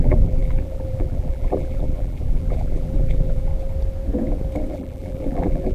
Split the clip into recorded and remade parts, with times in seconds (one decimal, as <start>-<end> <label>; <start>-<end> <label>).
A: 0.0-3.5 remade; 3.5-4.7 recorded; 4.7-5.7 remade